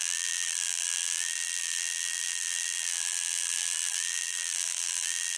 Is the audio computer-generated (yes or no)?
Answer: yes